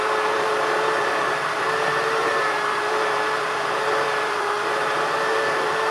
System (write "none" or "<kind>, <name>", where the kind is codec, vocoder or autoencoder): vocoder, BigVGAN v2